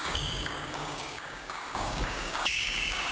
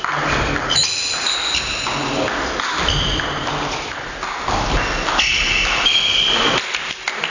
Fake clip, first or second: first